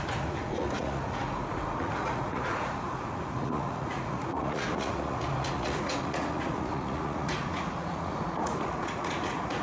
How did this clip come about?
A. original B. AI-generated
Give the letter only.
B